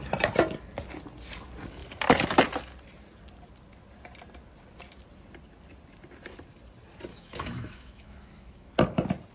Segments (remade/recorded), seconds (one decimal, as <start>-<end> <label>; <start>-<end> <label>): 0.0-7.1 recorded; 7.1-8.7 remade; 8.7-9.3 recorded